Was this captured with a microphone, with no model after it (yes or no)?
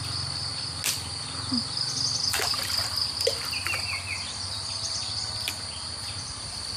yes